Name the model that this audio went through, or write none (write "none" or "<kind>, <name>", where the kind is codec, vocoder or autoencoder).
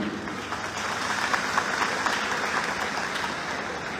none